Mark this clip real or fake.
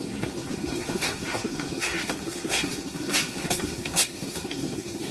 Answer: fake